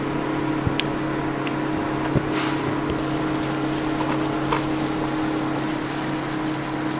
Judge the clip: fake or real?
real